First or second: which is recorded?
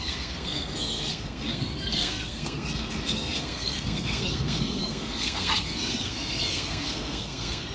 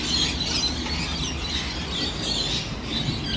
second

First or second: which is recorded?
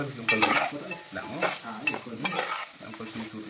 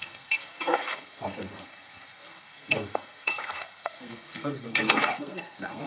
first